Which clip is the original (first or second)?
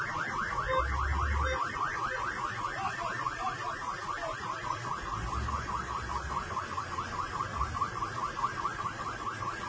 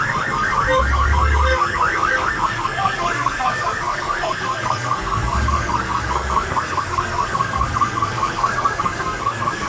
first